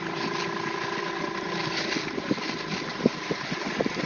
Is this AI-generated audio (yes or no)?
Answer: yes